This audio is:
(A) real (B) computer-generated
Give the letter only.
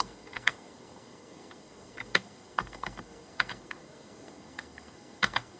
B